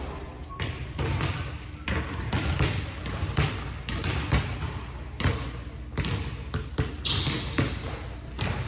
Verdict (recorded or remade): recorded